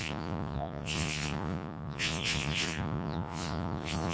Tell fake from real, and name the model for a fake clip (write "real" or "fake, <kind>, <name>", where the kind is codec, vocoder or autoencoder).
fake, vocoder, Vocos